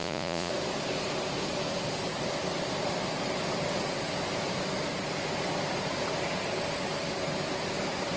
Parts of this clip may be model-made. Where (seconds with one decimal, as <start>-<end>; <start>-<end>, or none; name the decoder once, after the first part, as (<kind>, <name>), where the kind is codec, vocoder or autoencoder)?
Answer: 0.0-0.5 (vocoder, Vocos)